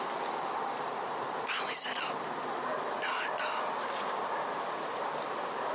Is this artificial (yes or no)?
no